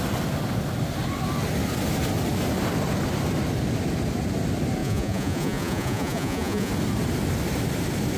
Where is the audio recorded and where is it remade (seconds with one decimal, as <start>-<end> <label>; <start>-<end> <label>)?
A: 0.0-4.8 recorded; 4.8-6.7 remade; 6.7-8.2 recorded